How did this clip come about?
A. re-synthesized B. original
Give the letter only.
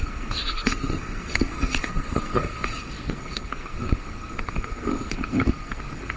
A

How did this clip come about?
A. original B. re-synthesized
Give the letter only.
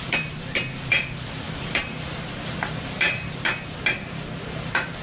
B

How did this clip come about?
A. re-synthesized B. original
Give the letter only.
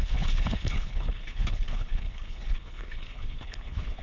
A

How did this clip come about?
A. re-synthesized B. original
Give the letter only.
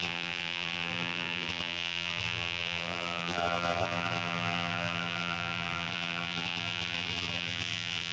A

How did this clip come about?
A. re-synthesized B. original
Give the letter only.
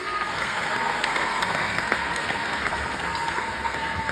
A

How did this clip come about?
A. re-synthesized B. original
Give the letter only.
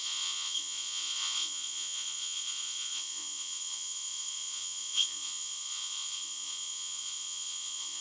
A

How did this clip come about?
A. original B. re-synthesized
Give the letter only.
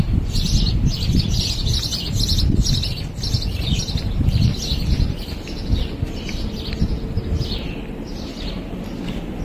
A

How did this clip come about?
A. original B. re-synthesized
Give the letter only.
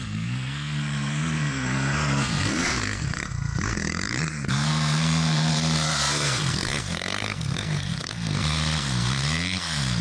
B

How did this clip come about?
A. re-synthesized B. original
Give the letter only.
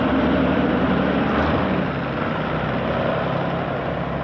B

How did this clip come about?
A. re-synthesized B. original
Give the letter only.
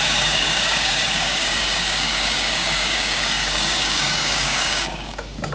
A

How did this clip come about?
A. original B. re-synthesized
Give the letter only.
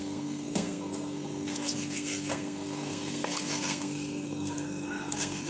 B